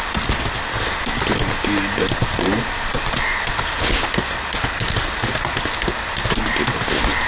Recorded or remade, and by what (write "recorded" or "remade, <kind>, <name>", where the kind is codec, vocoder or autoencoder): recorded